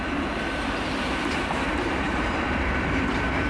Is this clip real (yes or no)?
no